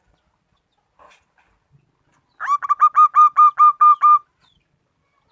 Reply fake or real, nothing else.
real